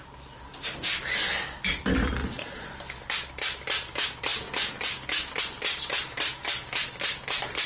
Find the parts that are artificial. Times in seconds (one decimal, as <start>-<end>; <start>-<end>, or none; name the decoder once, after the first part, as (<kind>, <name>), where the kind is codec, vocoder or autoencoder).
2.2-2.7 (vocoder, Vocos)